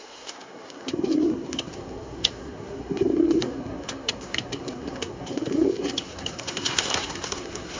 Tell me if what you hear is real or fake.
fake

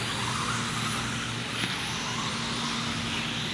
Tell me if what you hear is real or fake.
real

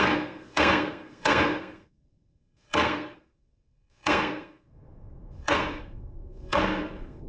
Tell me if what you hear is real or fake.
fake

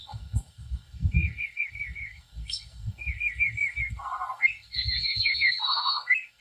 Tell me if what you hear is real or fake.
fake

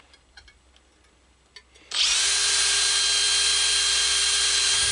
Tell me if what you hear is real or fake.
real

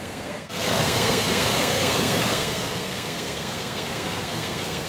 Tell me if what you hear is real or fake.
fake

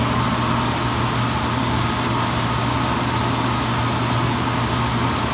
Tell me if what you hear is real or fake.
real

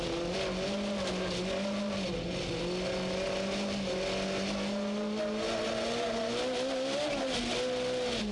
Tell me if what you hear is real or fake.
real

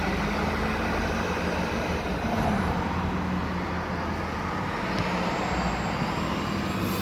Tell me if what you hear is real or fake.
real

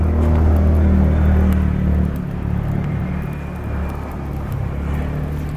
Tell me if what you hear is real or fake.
real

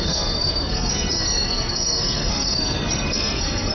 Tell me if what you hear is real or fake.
fake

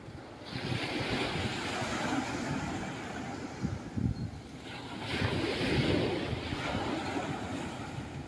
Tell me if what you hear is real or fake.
real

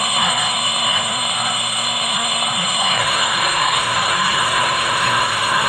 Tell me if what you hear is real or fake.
fake